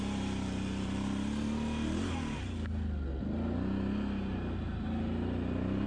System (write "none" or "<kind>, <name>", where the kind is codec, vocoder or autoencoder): none